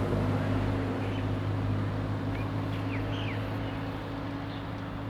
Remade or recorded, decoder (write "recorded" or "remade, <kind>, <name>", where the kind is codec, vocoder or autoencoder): recorded